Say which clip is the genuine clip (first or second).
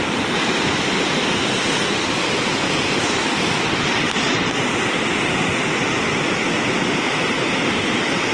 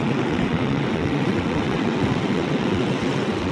first